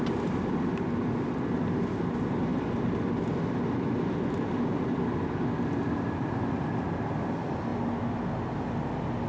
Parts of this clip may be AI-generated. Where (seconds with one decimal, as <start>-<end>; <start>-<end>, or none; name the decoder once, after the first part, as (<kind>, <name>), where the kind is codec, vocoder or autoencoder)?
none